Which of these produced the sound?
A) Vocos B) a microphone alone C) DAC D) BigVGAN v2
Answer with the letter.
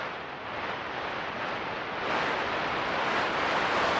B